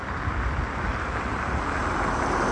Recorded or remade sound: recorded